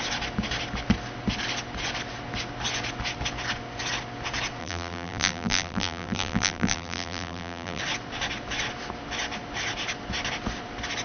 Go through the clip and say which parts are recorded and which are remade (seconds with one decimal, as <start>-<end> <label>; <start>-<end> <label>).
0.0-4.6 recorded; 4.6-7.8 remade; 7.8-11.0 recorded